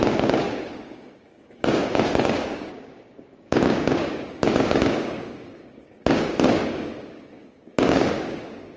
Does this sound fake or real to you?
fake